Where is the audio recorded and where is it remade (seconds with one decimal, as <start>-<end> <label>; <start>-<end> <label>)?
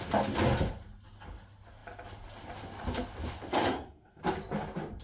0.0-3.6 recorded; 3.6-4.2 remade; 4.2-5.0 recorded